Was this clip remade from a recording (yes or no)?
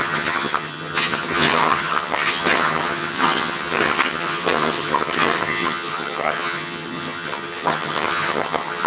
yes